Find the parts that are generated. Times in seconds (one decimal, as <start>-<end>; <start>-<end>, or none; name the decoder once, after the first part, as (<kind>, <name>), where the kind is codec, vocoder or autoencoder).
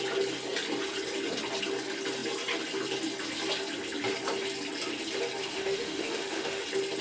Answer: 5.4-6.6 (autoencoder, DAC-VAE)